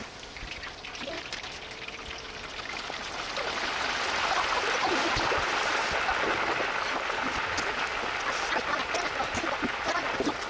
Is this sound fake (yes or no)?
no